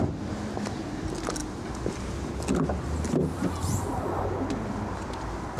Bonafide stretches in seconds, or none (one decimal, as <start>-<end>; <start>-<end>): 0.0-5.6